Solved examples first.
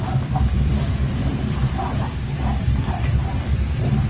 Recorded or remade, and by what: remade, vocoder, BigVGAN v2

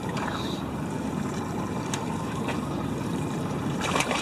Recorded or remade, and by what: remade, vocoder, BigVGAN v2